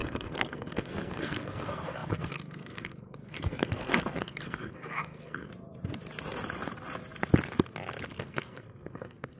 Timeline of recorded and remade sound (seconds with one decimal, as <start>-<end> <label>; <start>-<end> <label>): 0.0-5.5 remade; 5.5-8.2 recorded; 8.2-9.4 remade